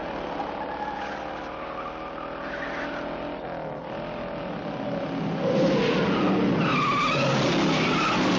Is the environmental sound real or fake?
real